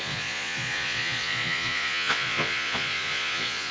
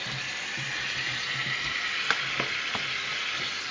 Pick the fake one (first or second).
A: first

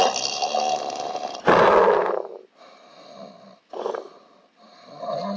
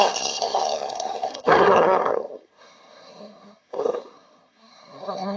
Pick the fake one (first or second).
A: second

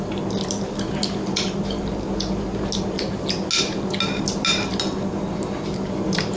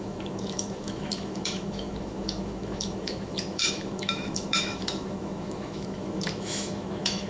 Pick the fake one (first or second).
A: second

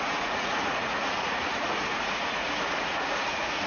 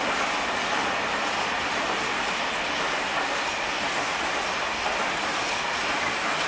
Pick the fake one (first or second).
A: first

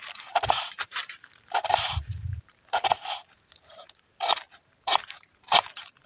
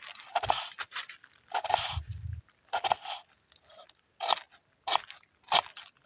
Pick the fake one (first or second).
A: first